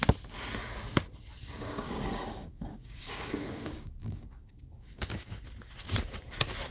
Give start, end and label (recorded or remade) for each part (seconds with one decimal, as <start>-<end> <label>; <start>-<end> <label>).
0.0-1.4 recorded; 1.4-5.4 remade; 5.4-6.7 recorded